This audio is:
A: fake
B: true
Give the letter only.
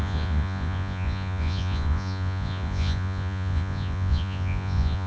A